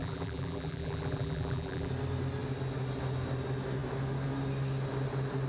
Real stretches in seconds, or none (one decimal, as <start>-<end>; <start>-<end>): 1.9-5.5